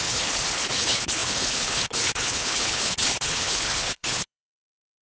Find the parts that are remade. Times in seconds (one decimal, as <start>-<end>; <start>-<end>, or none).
0.0-5.0